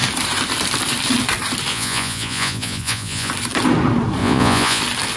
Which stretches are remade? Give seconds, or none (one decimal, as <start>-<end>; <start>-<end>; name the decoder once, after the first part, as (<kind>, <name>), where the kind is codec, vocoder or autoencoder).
1.7-3.3 (vocoder, Vocos); 4.2-4.8